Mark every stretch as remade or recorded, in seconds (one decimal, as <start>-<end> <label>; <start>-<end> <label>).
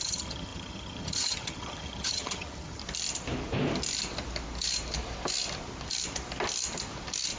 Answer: 0.0-2.8 remade; 2.8-7.4 recorded